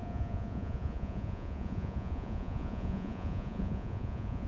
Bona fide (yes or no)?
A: no